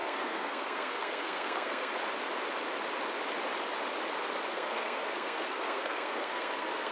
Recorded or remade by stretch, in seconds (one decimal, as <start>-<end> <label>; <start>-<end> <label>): 0.0-1.9 remade; 1.9-4.5 recorded; 4.5-6.9 remade